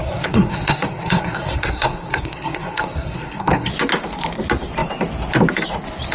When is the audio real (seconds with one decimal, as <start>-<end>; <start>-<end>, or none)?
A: 3.7-6.1